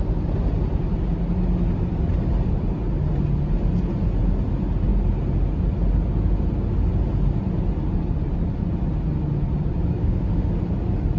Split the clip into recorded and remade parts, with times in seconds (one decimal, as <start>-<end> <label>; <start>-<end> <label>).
0.0-10.0 recorded; 10.0-10.5 remade; 10.5-11.2 recorded